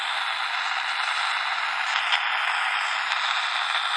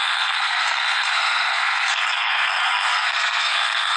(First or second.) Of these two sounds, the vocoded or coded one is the second